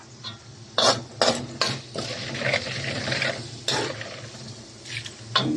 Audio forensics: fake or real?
real